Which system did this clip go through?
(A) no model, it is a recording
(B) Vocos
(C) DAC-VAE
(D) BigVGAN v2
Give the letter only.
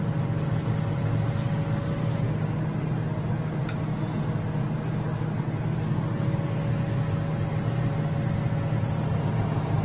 A